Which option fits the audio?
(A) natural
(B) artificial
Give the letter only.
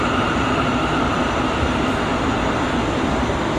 A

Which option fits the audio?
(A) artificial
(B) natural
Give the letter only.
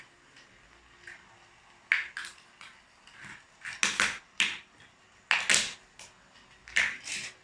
B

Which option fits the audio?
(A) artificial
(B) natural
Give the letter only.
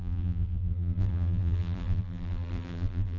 A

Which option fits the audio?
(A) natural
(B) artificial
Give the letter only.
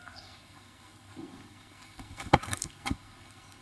B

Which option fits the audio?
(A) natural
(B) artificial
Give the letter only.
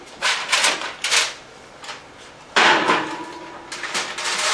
A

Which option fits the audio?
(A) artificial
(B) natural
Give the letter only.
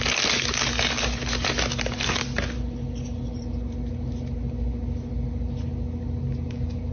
B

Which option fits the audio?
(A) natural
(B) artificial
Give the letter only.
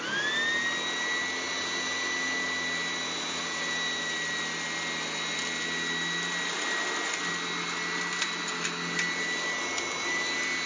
A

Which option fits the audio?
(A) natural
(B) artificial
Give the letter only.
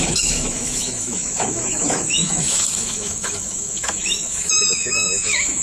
B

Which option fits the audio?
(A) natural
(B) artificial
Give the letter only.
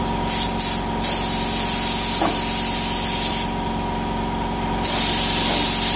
A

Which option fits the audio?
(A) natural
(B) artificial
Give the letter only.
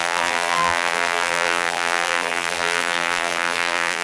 B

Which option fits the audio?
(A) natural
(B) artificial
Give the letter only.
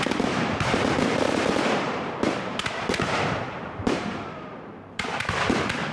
B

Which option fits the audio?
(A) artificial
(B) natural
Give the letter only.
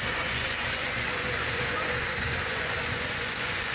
A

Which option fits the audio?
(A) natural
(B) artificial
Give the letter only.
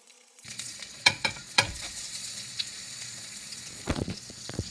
B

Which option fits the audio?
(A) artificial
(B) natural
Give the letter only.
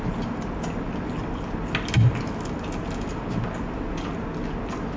B